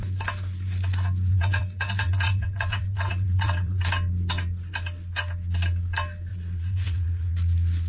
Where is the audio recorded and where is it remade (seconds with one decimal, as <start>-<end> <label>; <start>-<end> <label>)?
0.0-1.3 recorded; 1.3-3.8 remade; 3.8-6.3 recorded; 6.3-7.3 remade; 7.3-7.9 recorded